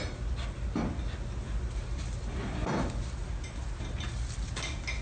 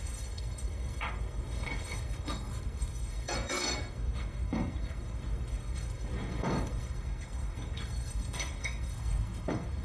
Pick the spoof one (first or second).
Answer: second